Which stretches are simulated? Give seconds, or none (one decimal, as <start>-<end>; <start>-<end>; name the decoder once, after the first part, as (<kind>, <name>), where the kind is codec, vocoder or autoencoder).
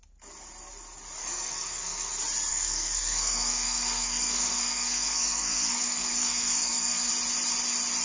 1.2-2.1 (codec, SNAC); 2.5-7.1